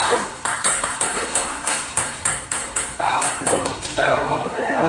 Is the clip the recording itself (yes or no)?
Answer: no